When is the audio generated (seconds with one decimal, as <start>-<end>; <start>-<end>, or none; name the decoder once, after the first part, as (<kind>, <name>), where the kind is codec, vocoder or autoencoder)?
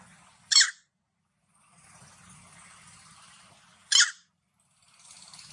none